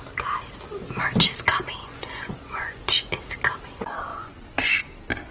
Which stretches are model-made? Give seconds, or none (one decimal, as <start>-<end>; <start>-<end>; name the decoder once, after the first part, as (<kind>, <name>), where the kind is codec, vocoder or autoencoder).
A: 1.8-3.1 (vocoder, Vocos); 4.1-4.8